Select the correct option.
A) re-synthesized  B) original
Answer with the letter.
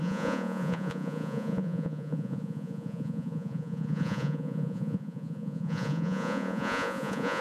A